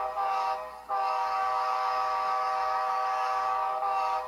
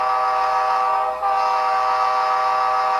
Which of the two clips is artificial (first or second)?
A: first